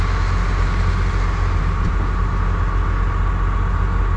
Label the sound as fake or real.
real